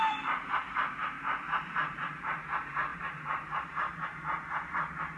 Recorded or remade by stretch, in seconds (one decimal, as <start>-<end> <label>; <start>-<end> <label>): 0.0-2.9 recorded; 2.9-4.7 remade; 4.7-5.2 recorded